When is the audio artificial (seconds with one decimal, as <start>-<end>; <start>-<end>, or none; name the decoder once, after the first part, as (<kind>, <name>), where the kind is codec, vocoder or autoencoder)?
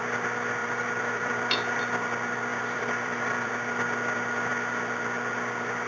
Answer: 0.6-1.8 (vocoder, BigVGAN v2); 2.5-3.5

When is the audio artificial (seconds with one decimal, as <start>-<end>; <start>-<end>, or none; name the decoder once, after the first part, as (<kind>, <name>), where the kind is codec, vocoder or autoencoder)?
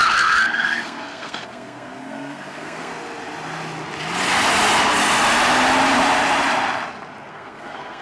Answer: 0.0-2.9 (codec, SNAC); 7.3-8.0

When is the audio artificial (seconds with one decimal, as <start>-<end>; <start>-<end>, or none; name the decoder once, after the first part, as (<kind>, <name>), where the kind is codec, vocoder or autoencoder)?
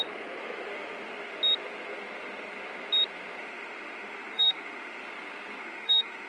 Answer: 0.0-1.3 (autoencoder, DAC-VAE); 3.4-5.0; 5.6-6.3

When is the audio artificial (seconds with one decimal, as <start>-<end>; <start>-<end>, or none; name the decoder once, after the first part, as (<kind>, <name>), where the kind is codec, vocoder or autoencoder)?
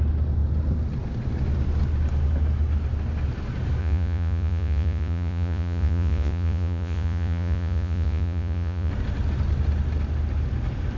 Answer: 3.8-8.9 (vocoder, Vocos)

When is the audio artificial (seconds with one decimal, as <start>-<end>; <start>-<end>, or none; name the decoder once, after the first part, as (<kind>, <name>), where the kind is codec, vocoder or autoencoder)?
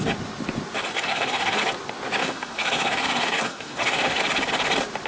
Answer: 0.9-1.6 (codec, SNAC); 2.2-4.2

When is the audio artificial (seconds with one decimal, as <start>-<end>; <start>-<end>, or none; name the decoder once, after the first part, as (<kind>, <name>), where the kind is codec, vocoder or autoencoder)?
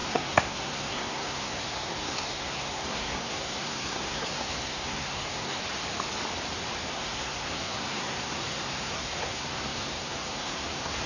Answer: 0.0-5.6 (codec, SNAC); 6.9-11.1